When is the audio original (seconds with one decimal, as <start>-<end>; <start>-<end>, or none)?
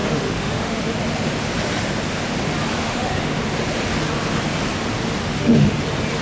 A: 0.8-2.8; 3.4-5.2; 5.8-6.2